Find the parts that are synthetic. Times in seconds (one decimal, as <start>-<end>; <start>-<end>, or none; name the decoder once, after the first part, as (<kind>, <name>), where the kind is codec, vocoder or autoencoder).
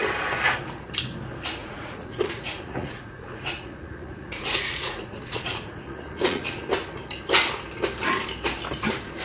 1.6-6.7 (vocoder, Vocos)